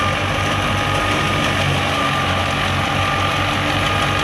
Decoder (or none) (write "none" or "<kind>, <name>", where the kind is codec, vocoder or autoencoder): none